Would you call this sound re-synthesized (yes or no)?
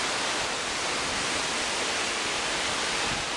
no